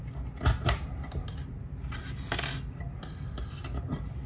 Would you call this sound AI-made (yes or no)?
no